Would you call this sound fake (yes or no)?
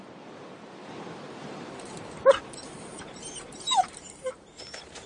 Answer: yes